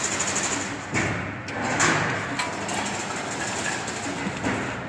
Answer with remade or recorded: recorded